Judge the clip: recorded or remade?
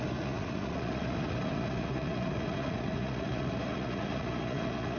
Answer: remade